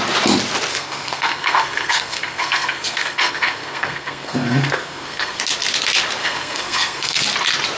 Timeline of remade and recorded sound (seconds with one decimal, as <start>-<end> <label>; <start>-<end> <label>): 0.0-0.7 recorded; 0.7-5.4 remade; 5.4-6.2 recorded; 6.2-7.2 remade; 7.2-7.8 recorded